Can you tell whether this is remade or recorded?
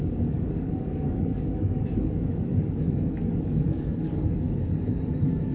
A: remade